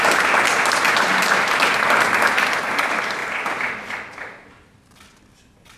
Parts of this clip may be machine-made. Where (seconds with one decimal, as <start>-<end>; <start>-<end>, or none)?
none